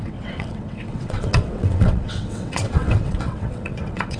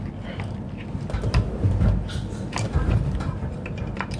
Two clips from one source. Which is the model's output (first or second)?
first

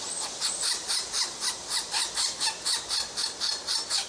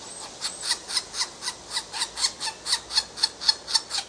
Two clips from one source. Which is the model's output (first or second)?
first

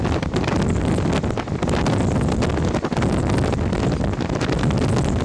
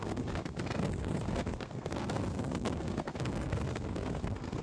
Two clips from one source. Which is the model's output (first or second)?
second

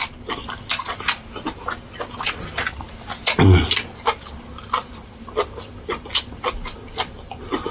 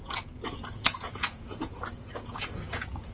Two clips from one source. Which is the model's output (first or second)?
second